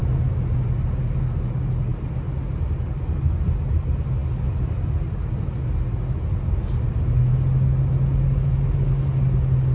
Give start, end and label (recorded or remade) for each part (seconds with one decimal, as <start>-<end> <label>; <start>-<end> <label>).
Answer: 0.0-9.7 recorded

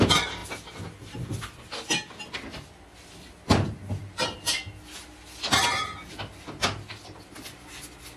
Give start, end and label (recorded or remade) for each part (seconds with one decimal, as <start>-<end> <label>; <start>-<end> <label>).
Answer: 0.0-8.2 recorded

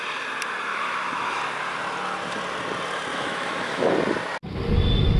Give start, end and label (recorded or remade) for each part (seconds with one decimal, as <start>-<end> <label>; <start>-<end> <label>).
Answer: 0.0-0.7 recorded; 0.7-1.4 remade; 1.4-3.1 recorded; 3.1-3.9 remade; 3.9-5.2 recorded

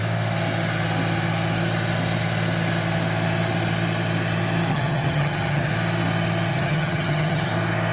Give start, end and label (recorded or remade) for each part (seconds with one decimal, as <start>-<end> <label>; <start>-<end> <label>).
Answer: 0.0-4.7 recorded; 4.7-5.7 remade; 5.7-6.5 recorded; 6.5-7.5 remade; 7.5-7.9 recorded

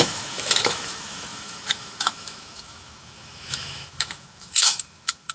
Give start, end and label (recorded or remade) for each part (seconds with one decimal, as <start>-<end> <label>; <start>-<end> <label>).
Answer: 0.0-5.3 remade

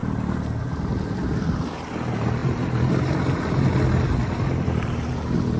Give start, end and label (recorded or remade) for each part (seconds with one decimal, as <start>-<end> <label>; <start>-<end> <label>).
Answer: 0.0-5.6 recorded

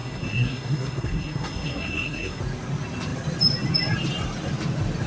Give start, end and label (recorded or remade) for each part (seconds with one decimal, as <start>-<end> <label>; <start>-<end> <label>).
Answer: 0.0-2.4 remade; 2.4-5.1 recorded